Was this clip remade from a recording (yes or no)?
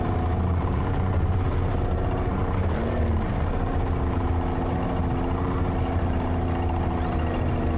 no